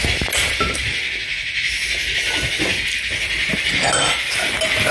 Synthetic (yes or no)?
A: no